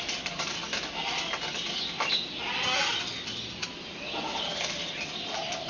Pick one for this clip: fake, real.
real